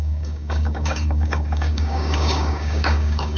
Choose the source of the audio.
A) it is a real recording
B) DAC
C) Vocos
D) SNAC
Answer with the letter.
B